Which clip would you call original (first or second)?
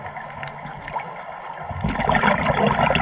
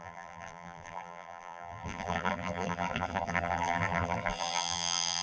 first